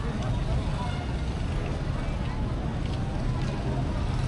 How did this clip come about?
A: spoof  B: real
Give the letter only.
B